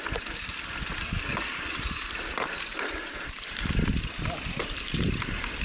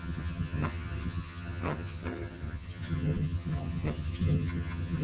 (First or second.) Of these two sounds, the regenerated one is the second